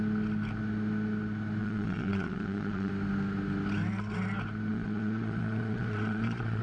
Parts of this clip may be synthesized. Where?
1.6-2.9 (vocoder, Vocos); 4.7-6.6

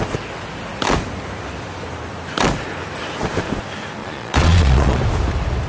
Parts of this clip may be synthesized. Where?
4.0-5.0 (vocoder, Vocos)

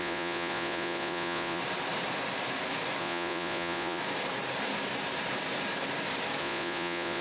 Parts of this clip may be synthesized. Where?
0.0-1.6 (vocoder, Vocos); 3.0-4.0; 6.4-7.2

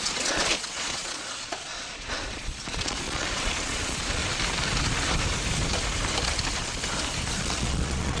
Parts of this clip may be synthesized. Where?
0.0-4.2 (vocoder, Vocos); 7.4-8.2